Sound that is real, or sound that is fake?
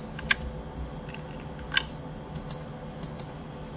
real